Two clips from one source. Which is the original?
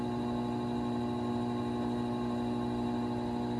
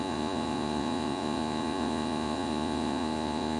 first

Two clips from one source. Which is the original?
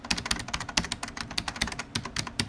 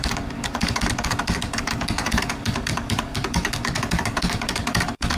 first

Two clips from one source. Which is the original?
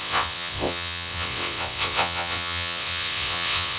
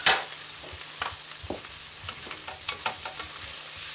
second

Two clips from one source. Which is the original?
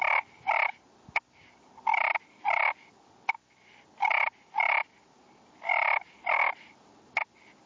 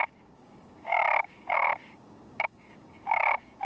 first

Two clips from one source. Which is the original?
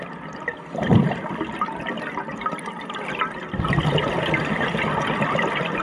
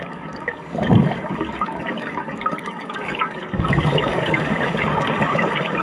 first